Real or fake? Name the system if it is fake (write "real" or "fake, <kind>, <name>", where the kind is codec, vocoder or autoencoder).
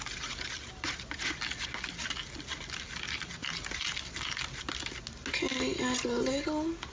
real